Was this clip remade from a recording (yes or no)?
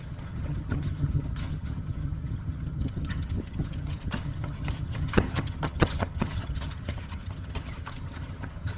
yes